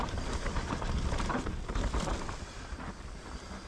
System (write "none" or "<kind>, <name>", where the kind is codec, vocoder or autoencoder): none